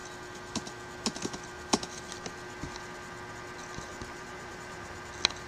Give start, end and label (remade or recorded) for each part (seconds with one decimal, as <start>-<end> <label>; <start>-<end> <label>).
0.0-3.9 recorded; 3.9-5.1 remade; 5.1-5.5 recorded